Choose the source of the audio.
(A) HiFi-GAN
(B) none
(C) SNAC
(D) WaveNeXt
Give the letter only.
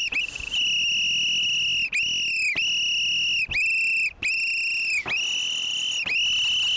B